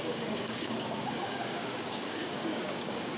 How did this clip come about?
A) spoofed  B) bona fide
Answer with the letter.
A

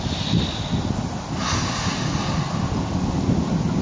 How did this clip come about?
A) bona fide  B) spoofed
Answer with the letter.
A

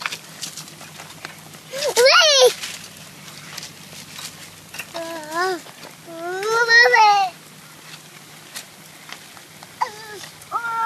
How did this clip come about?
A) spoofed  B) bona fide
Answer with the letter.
B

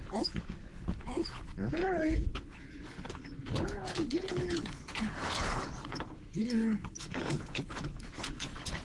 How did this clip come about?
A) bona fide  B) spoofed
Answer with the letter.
B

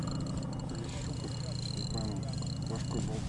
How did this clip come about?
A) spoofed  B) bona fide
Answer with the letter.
B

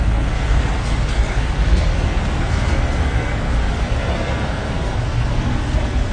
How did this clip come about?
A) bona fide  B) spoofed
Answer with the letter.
B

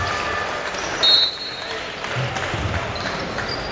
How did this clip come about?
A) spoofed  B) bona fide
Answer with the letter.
B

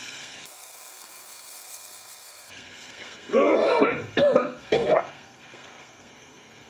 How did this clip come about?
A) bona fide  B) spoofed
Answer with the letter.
B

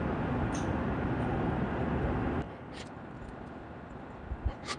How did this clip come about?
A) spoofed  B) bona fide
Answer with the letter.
B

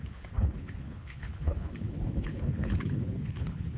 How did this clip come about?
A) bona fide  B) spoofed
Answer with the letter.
B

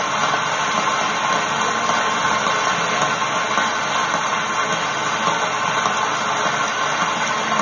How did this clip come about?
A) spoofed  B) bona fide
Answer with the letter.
B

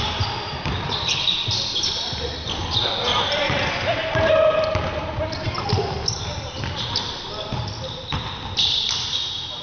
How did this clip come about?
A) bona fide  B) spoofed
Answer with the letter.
B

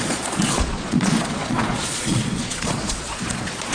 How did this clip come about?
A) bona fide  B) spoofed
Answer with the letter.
B